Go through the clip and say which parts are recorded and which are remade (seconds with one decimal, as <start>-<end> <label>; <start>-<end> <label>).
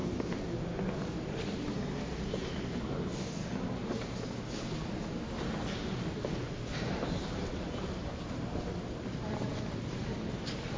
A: 0.0-5.8 recorded; 5.8-10.8 remade